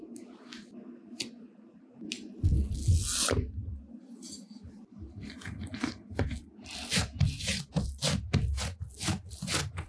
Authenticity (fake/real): real